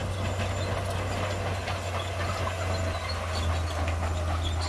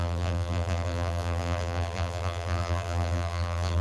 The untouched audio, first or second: first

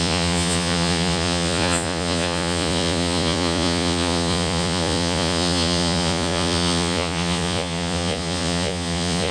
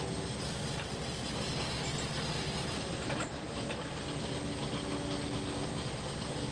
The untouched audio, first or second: second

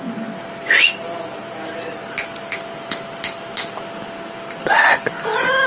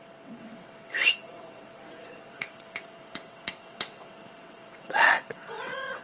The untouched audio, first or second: first